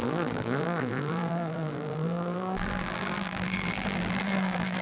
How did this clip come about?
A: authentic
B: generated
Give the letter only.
B